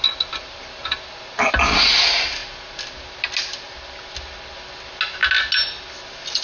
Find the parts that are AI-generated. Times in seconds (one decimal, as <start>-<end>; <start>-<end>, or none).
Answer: none